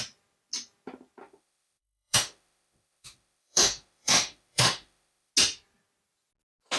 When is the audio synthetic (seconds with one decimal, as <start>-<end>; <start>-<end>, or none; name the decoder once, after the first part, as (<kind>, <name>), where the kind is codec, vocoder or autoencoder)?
1.2-5.3 (autoencoder, DAC-VAE)